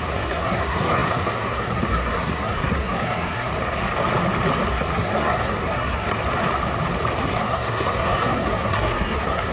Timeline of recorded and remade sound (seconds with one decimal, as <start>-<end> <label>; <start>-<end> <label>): 0.0-3.5 remade; 3.5-4.7 recorded; 4.7-6.2 remade; 6.2-7.2 recorded; 7.2-9.5 remade